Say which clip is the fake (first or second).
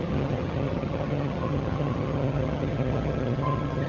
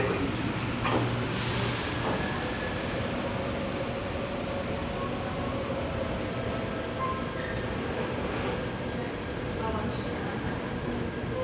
first